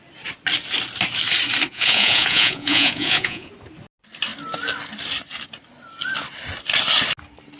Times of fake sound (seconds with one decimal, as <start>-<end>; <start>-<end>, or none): 1.7-3.5